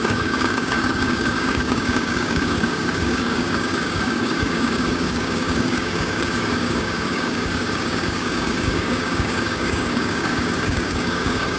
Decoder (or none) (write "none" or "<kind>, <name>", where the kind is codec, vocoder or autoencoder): codec, DAC